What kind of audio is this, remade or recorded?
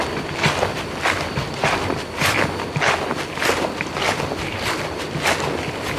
recorded